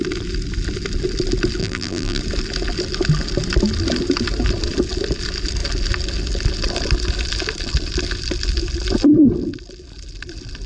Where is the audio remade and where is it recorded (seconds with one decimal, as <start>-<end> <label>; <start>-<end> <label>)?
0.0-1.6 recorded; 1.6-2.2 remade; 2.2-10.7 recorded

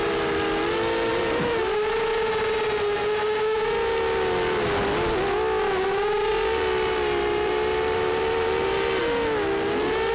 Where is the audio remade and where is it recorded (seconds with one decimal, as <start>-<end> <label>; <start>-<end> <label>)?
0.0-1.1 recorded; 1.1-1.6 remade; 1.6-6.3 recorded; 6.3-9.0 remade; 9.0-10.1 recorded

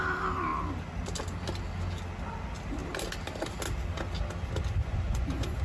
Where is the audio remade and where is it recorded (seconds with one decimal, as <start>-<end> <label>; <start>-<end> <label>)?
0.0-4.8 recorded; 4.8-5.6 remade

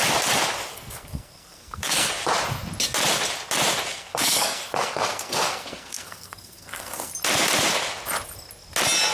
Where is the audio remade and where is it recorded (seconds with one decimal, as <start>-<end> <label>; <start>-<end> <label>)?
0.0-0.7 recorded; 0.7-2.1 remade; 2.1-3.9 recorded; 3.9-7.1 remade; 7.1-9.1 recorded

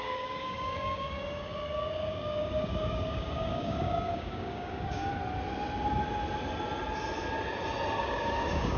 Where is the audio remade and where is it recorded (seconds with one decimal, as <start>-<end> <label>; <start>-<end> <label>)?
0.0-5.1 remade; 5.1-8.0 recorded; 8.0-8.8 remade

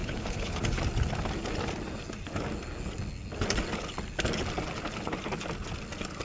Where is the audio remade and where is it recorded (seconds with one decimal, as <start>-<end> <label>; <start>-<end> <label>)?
0.0-0.8 remade; 0.8-6.2 recorded